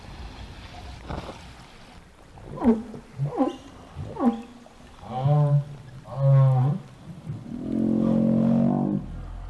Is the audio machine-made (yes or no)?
no